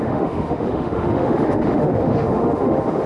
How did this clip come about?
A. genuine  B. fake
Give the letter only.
B